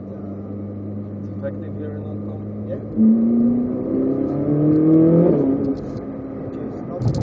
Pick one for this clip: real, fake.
real